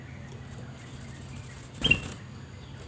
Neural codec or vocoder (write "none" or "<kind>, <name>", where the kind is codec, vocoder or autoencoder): none